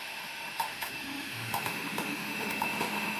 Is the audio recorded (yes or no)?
no